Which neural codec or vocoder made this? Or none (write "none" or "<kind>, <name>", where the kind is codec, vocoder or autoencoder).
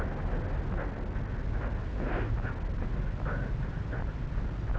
none